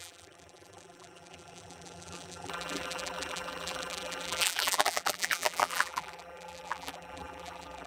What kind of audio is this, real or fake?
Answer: fake